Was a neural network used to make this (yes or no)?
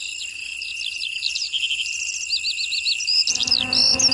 no